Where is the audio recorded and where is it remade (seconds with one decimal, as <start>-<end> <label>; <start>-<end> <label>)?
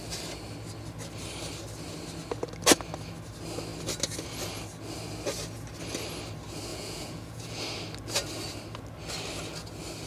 0.0-6.7 recorded; 6.7-7.6 remade; 7.6-10.1 recorded